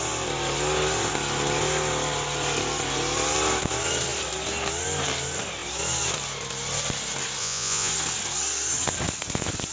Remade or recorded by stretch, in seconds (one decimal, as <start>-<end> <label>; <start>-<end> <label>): 0.0-7.4 recorded; 7.4-7.9 remade; 7.9-9.7 recorded